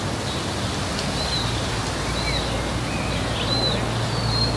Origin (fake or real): real